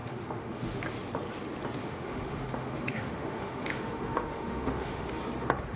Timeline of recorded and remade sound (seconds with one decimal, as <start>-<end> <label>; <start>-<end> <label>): 0.0-0.8 remade; 0.8-1.8 recorded; 1.8-5.2 remade; 5.2-5.8 recorded